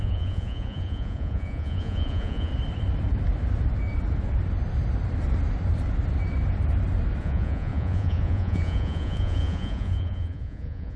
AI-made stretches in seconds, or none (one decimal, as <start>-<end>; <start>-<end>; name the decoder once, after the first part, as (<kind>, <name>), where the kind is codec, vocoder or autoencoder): 0.0-2.5 (vocoder, Vocos); 7.2-11.0